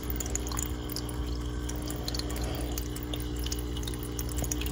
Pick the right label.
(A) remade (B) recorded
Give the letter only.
B